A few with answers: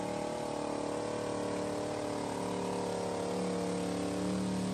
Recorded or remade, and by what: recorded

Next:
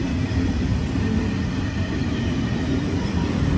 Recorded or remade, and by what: recorded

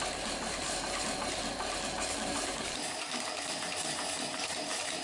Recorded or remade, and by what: remade, vocoder, BigVGAN v2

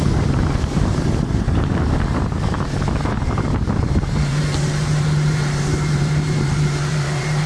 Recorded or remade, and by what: remade, vocoder, BigVGAN v2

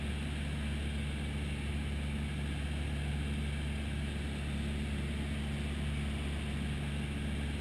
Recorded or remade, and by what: recorded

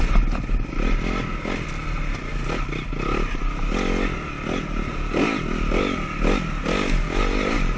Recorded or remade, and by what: recorded